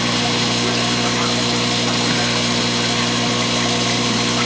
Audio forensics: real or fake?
real